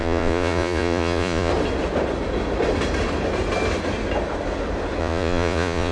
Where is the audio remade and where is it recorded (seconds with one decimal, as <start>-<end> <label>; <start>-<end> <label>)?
0.0-1.5 remade; 1.5-5.0 recorded; 5.0-5.9 remade